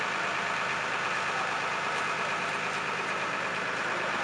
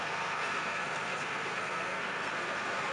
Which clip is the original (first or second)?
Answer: first